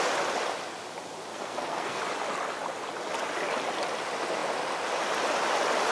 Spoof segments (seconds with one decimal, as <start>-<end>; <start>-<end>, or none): 1.3-2.0